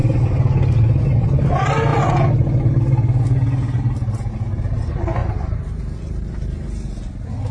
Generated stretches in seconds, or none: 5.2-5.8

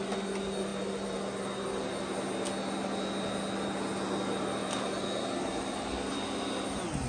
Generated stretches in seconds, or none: 0.7-1.2

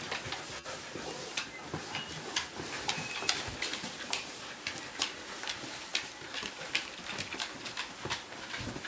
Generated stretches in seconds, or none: 5.9-7.6